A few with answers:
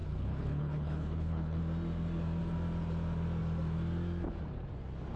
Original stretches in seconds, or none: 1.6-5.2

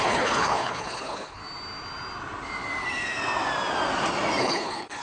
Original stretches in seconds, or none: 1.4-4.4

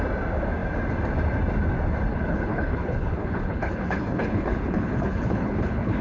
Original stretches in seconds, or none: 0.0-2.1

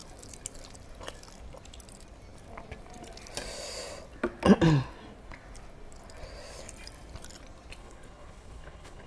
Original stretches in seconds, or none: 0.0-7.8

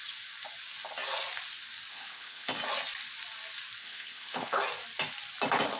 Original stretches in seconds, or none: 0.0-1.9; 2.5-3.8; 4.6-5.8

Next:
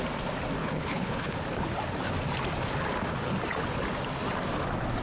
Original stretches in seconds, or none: 0.0-0.6; 1.3-5.0

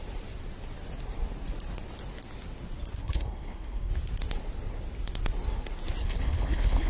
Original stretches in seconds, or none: 0.0-3.0; 3.9-6.0